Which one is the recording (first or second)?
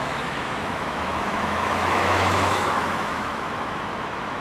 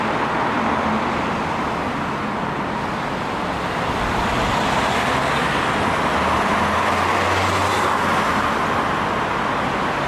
second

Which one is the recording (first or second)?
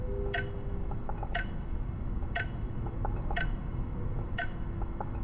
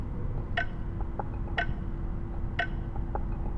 second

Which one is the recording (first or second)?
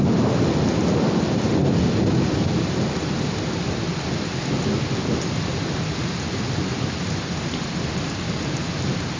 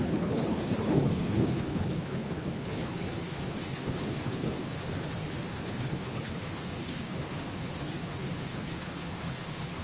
first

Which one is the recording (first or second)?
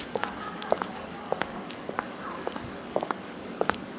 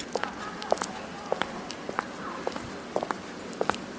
second